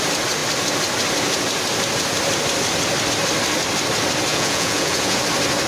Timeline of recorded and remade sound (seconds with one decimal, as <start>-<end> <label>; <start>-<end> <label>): 0.0-4.3 recorded; 4.3-5.2 remade; 5.2-5.7 recorded